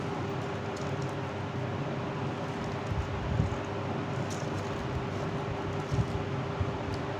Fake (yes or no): no